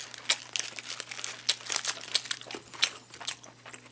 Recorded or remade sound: recorded